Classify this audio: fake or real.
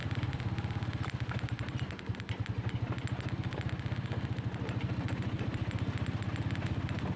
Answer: real